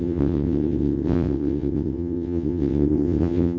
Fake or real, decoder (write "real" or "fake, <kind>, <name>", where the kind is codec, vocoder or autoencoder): fake, vocoder, WaveNeXt